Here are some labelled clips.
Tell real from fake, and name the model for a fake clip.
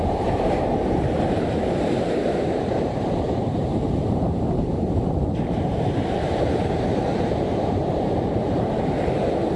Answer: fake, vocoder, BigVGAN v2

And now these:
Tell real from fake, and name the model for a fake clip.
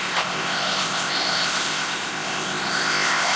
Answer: fake, codec, ZipCodec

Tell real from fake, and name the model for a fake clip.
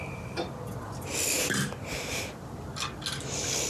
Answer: real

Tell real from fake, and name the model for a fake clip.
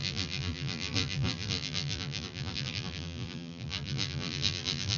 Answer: fake, vocoder, BigVGAN v2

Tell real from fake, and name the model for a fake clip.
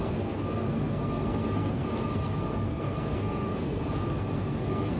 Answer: fake, codec, SNAC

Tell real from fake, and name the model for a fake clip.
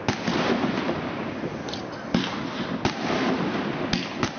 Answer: real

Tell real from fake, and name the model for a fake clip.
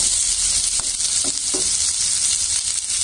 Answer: real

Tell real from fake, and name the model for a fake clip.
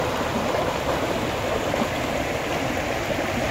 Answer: real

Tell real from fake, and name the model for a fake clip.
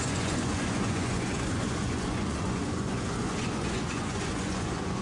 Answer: fake, vocoder, Vocos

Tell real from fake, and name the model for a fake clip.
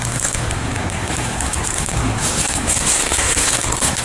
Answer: fake, codec, SNAC